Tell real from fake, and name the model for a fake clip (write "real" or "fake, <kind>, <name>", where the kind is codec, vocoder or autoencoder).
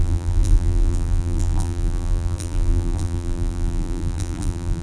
fake, vocoder, BigVGAN v2